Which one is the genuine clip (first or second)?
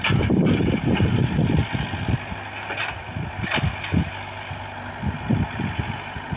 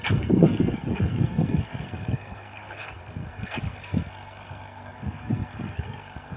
first